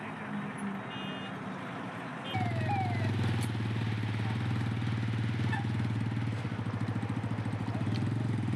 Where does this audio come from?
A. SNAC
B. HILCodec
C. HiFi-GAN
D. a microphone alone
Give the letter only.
D